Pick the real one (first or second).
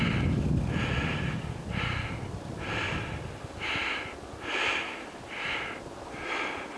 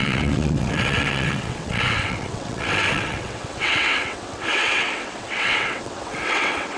first